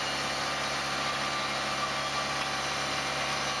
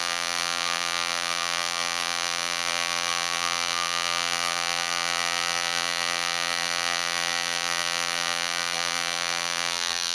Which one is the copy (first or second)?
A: second